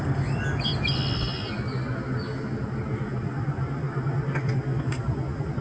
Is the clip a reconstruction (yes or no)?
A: no